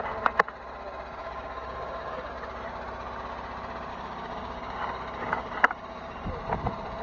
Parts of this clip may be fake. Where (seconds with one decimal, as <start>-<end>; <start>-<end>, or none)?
1.2-2.3; 3.9-6.3